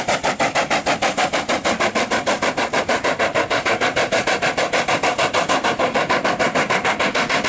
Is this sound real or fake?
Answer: fake